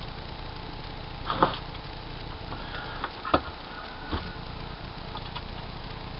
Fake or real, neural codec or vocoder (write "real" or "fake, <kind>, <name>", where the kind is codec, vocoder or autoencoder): real